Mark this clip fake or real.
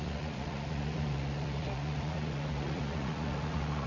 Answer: fake